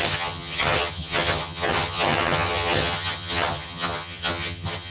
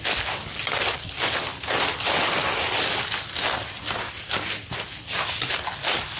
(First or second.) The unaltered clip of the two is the second